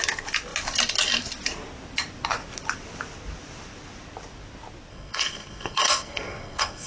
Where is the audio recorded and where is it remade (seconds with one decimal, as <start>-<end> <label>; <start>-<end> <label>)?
0.0-4.9 recorded; 4.9-6.9 remade